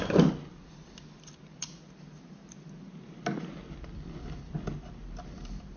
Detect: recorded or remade recorded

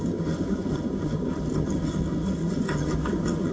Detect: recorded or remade remade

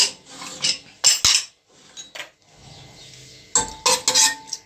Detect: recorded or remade recorded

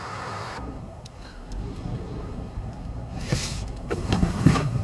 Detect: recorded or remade remade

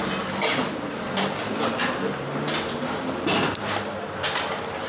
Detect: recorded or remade recorded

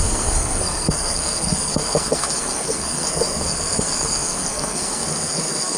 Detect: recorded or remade remade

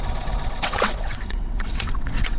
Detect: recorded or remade remade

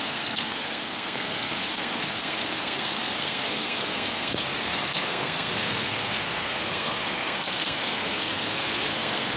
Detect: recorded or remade remade